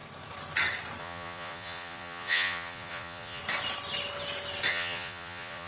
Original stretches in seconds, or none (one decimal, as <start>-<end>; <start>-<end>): 0.0-1.0; 3.4-4.7